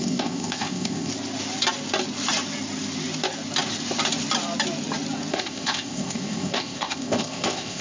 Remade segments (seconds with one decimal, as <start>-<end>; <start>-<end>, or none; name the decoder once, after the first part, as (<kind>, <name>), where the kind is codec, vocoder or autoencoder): 0.0-1.1 (codec, ZipCodec); 5.3-7.8